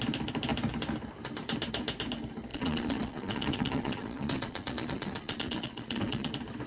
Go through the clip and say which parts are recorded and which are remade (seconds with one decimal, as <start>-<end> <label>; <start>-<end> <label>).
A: 0.0-2.5 recorded; 2.5-6.3 remade; 6.3-6.7 recorded